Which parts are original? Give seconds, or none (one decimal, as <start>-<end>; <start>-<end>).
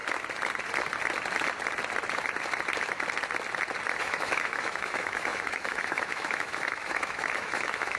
0.0-4.0